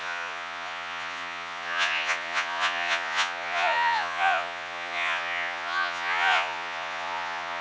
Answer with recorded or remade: remade